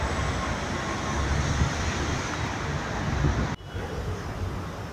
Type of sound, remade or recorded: recorded